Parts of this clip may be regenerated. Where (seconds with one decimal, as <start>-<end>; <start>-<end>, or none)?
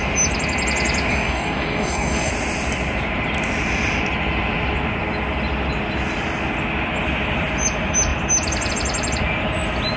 1.1-2.3